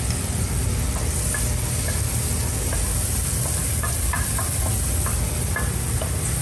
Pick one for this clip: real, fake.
real